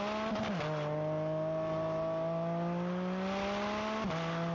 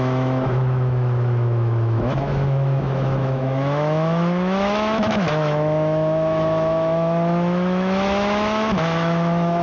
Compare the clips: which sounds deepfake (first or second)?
second